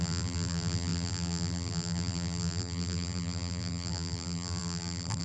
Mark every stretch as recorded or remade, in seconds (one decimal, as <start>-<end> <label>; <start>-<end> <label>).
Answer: 0.0-5.2 remade